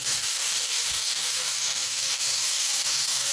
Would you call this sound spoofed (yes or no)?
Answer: yes